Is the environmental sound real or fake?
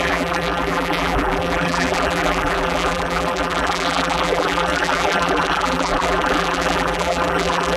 fake